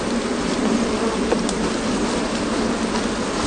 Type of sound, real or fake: fake